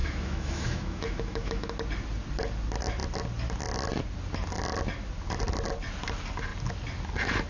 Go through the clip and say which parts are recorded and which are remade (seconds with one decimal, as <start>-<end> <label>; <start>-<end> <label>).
0.0-1.7 remade; 1.7-7.5 recorded